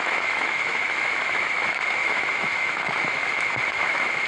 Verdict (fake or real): fake